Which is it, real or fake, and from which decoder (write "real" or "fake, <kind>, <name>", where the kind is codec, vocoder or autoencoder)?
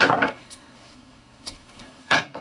fake, codec, SNAC